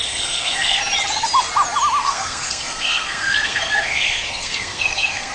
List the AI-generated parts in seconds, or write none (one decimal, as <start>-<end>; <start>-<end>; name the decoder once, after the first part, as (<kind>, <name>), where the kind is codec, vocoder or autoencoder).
0.0-0.8 (codec, SNAC); 2.0-5.3